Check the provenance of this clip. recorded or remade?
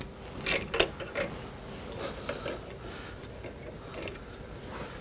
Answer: recorded